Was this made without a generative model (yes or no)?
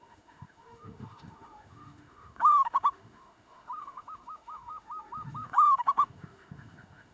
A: no